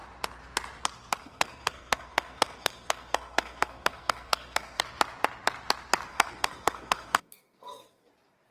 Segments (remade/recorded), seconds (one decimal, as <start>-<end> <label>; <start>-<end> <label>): 0.0-1.2 recorded; 1.2-4.8 remade; 4.8-6.1 recorded; 6.1-8.1 remade; 8.1-8.5 recorded